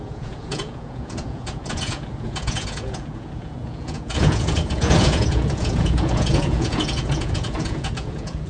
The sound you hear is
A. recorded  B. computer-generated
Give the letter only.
B